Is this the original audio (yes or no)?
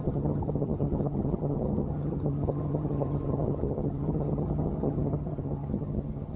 no